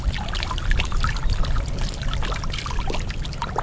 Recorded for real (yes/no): yes